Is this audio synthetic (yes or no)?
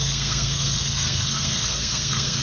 yes